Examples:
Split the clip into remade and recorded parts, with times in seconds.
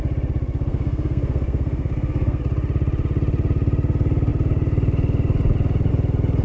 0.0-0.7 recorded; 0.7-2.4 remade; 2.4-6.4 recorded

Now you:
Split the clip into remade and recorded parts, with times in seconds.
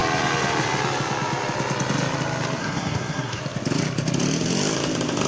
0.0-2.6 recorded; 2.6-3.4 remade; 3.4-5.3 recorded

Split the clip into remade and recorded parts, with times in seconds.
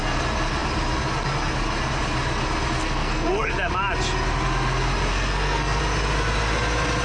0.0-2.8 recorded; 2.8-3.5 remade; 3.5-5.1 recorded; 5.1-5.8 remade; 5.8-7.0 recorded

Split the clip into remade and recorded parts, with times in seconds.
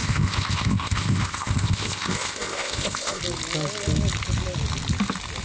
0.0-3.2 remade; 3.2-5.4 recorded